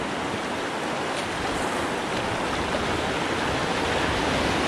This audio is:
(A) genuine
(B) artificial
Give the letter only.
A